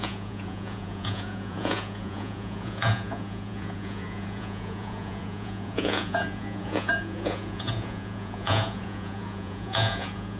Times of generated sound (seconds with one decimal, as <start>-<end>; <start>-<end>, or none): 0.0-10.4